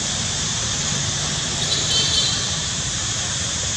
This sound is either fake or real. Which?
fake